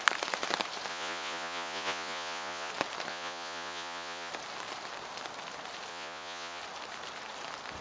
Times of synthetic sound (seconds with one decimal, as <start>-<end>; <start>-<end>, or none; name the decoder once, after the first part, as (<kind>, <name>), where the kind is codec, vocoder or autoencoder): 0.9-2.7 (vocoder, Vocos); 3.1-4.3; 5.9-6.6